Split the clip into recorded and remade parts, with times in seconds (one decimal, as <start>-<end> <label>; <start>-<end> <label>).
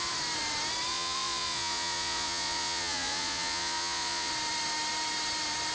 0.0-0.9 recorded; 0.9-4.3 remade; 4.3-5.7 recorded